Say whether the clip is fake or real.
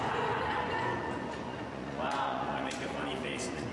fake